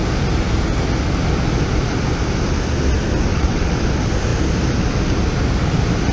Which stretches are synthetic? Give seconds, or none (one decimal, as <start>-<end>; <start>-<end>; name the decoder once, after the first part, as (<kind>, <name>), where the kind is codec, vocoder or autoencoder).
3.3-3.8 (vocoder, WaveNeXt)